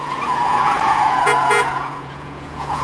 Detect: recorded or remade remade